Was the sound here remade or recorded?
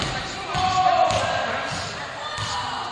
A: recorded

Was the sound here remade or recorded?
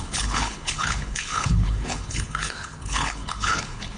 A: remade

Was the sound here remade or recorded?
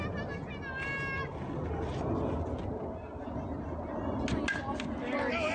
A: recorded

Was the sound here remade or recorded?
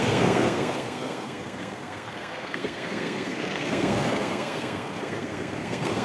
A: remade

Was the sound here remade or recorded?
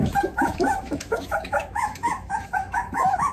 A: remade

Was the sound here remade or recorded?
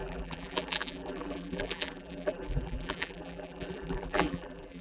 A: remade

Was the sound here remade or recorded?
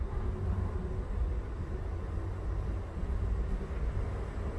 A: recorded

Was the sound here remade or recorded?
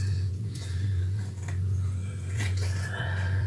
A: remade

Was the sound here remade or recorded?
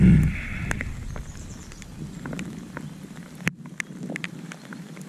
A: recorded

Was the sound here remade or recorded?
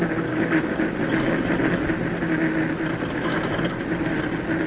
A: recorded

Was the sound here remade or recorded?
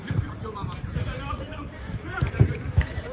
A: remade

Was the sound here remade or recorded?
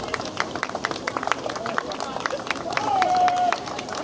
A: remade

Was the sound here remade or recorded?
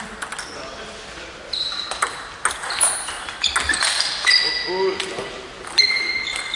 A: recorded